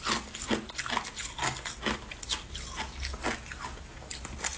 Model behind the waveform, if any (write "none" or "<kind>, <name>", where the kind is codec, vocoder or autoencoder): none